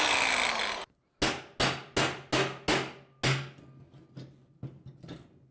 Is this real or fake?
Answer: real